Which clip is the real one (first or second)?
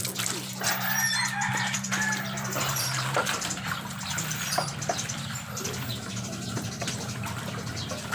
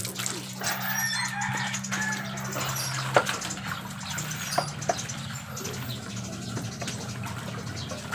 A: second